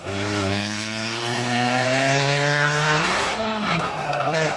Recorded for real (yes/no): no